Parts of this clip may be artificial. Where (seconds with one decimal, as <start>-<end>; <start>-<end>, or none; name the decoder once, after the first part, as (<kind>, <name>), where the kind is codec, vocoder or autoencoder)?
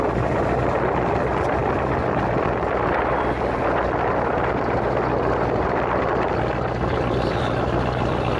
0.0-8.4 (vocoder, BigVGAN v2)